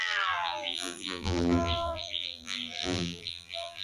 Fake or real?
fake